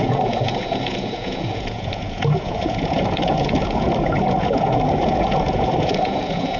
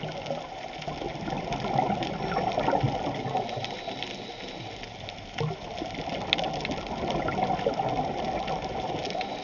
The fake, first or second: first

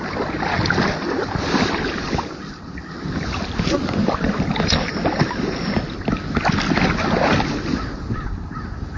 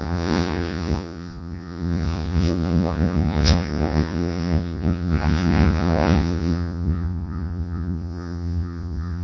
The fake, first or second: second